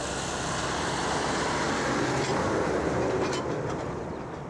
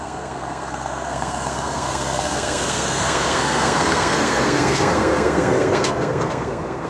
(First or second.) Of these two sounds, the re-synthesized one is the second